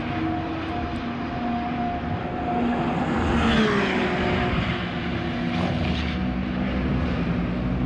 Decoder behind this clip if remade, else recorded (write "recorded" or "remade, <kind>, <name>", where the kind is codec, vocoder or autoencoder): recorded